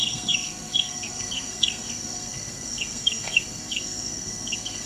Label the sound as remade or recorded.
remade